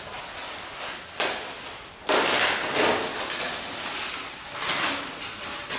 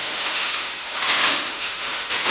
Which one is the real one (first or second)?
first